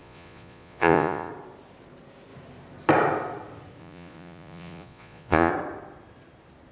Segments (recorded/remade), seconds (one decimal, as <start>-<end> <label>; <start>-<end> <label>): 0.0-1.3 remade; 1.3-3.8 recorded; 3.8-5.5 remade; 5.5-6.7 recorded

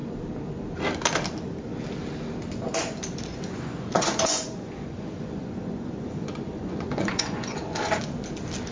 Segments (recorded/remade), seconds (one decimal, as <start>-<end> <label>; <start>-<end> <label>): 0.0-3.3 recorded; 3.3-7.6 remade; 7.6-8.7 recorded